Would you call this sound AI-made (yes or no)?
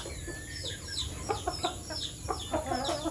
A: no